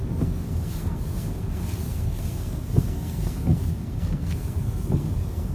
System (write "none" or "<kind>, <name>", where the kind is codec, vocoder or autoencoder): codec, SNAC